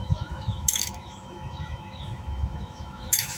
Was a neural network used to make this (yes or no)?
yes